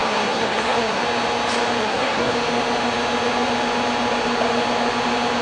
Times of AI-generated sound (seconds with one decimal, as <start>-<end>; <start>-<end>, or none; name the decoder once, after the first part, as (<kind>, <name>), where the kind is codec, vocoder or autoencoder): 0.0-1.0 (codec, SNAC); 1.8-2.3